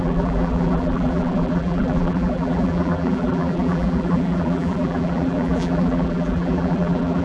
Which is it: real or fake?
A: fake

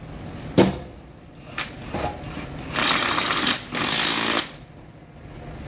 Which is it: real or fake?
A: real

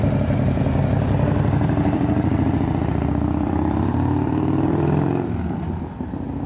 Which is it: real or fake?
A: fake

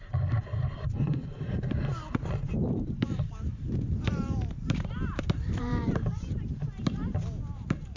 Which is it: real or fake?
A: fake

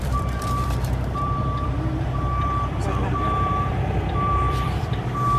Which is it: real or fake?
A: fake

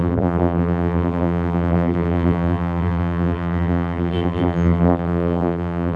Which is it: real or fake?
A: fake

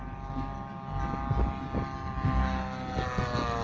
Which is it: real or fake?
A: real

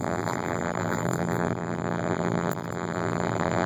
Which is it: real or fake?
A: fake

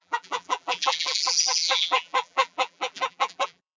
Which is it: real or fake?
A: fake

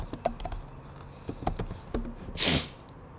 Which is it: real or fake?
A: real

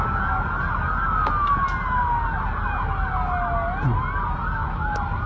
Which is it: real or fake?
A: real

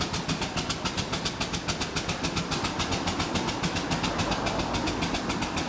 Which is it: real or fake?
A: real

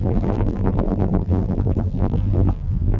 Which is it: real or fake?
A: fake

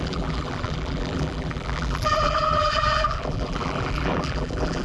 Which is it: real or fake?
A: fake